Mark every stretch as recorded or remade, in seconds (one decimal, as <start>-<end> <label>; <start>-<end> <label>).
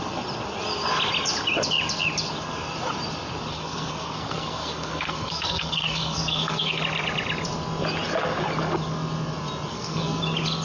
0.0-3.5 recorded; 3.5-6.8 remade; 6.8-9.7 recorded; 9.7-10.2 remade; 10.2-10.6 recorded